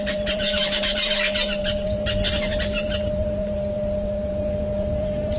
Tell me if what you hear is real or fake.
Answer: fake